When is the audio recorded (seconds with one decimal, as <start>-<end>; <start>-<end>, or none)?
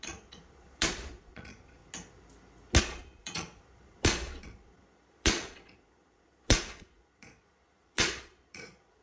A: 1.8-2.8